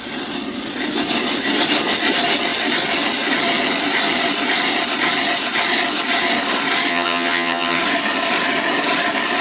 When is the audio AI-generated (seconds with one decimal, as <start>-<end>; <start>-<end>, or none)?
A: 6.9-7.8